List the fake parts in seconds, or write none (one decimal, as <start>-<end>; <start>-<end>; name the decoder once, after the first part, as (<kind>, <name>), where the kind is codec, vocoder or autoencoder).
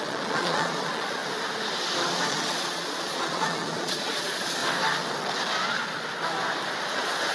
0.0-1.2 (vocoder, Vocos); 2.3-4.6; 6.8-7.3